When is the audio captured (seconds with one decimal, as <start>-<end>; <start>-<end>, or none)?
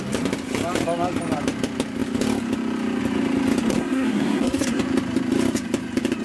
0.0-3.7; 4.8-6.2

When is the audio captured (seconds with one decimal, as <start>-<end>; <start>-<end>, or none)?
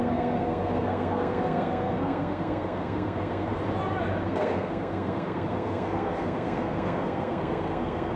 3.6-4.2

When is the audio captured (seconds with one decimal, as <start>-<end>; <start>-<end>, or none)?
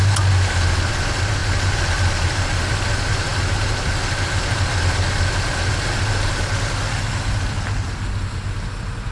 0.0-9.1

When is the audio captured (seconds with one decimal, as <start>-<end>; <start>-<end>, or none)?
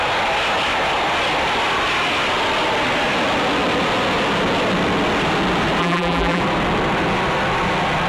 0.0-5.8; 6.4-8.1